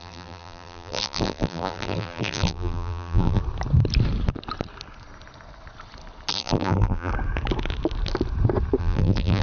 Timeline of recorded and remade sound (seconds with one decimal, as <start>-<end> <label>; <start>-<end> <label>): 0.0-3.4 remade; 3.4-6.3 recorded; 6.3-7.1 remade; 7.1-8.8 recorded; 8.8-9.4 remade